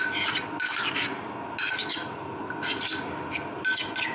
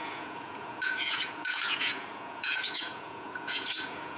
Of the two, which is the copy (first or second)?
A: second